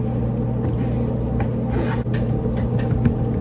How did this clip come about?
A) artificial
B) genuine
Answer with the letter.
B